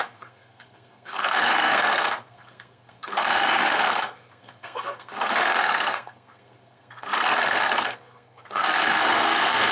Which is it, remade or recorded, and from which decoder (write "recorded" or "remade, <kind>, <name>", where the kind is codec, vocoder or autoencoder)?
remade, codec, SNAC